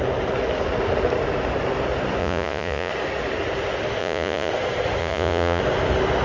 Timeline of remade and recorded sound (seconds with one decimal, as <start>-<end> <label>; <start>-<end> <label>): 0.0-2.2 recorded; 2.2-2.9 remade; 2.9-4.0 recorded; 4.0-4.5 remade; 4.5-5.0 recorded; 5.0-5.6 remade; 5.6-6.2 recorded